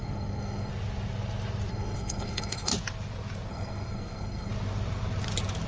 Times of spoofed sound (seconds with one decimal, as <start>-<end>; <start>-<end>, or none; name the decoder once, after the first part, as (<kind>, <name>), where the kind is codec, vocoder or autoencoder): 0.0-0.7 (codec, SNAC); 1.7-2.7; 3.5-4.5